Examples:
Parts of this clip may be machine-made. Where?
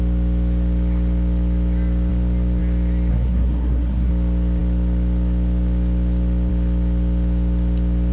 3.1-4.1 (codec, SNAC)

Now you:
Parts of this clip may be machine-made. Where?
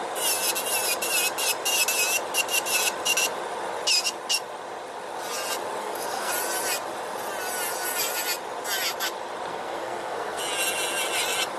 5.8-6.3 (codec, SNAC); 9.5-10.4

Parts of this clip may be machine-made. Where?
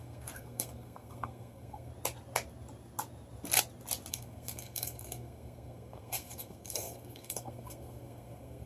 0.0-1.9 (codec, SNAC); 4.1-8.7